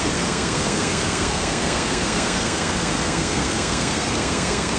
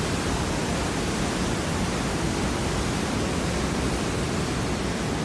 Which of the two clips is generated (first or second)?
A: first